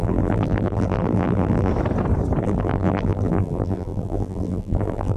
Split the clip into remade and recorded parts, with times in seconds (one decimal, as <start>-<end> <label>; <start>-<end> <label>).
0.0-1.7 remade; 1.7-2.4 recorded; 2.4-5.2 remade